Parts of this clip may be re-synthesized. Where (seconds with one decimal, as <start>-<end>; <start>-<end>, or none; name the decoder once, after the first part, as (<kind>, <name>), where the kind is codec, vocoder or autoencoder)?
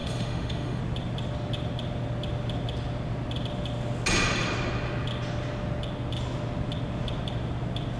0.0-0.8 (autoencoder, DAC-VAE)